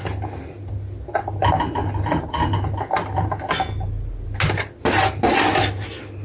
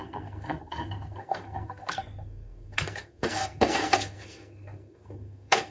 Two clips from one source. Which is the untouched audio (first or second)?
first